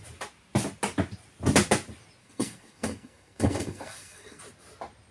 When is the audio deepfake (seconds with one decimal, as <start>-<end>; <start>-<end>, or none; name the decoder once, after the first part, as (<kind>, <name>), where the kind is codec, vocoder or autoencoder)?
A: 2.2-4.4 (codec, SNAC)